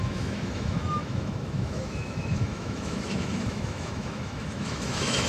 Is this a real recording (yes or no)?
no